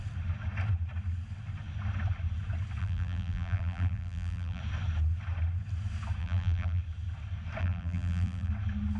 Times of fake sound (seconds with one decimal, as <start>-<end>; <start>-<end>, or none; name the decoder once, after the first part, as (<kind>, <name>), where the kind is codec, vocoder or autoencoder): 2.8-4.6 (vocoder, BigVGAN v2); 6.2-6.8; 7.6-8.5